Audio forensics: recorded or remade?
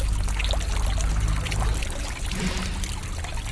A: recorded